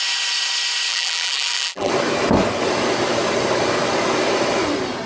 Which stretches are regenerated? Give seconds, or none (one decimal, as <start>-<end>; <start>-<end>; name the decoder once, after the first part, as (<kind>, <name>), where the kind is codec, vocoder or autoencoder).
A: 0.9-1.9 (vocoder, BigVGAN v2)

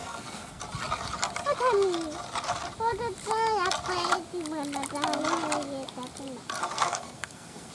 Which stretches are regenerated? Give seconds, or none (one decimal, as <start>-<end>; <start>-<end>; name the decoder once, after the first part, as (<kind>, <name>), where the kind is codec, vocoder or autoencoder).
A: 0.0-0.6 (codec, SNAC); 6.6-7.7

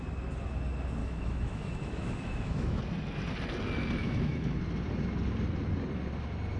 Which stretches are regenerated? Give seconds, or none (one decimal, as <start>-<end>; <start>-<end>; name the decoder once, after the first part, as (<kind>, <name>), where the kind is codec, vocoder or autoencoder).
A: 1.0-2.8 (autoencoder, DAC-VAE); 4.0-4.6

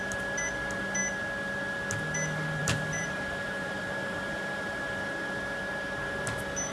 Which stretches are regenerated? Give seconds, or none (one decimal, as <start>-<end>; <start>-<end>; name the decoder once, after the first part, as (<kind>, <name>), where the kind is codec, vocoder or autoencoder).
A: 2.6-4.8 (vocoder, BigVGAN v2)

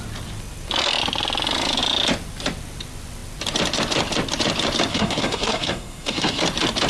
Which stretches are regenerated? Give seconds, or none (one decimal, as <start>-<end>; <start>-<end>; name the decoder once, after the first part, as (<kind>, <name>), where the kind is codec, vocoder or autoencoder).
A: 4.9-6.4 (codec, SNAC)

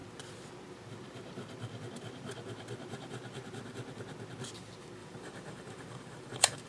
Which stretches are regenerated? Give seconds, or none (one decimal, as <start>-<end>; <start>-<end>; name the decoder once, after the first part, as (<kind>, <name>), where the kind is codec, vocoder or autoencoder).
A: 5.0-6.7 (vocoder, BigVGAN v2)

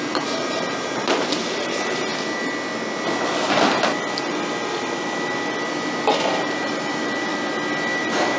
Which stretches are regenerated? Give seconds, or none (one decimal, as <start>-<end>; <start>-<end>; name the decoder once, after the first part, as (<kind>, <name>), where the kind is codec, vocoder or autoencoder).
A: 0.0-2.1 (vocoder, BigVGAN v2); 6.4-7.3; 8.0-8.4